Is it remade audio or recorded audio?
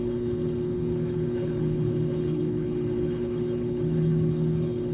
remade